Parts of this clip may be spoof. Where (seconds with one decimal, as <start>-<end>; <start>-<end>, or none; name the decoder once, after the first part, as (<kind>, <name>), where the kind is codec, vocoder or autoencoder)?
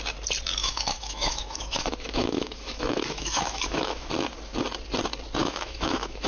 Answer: 0.6-4.1 (autoencoder, DAC-VAE); 5.4-6.3